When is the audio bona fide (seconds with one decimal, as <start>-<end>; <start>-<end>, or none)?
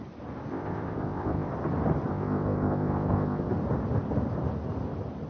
0.0-0.5; 1.5-2.1; 3.5-5.3